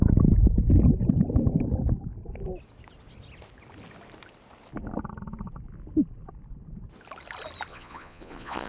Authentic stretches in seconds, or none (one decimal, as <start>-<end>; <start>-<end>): 0.0-7.7